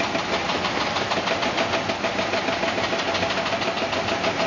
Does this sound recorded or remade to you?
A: recorded